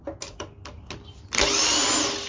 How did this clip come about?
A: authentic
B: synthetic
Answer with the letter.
A